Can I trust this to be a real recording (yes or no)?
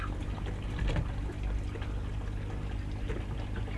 yes